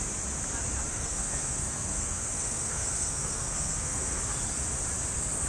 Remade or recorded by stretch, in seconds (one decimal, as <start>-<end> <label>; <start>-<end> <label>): 0.0-0.9 recorded; 0.9-4.2 remade; 4.2-5.5 recorded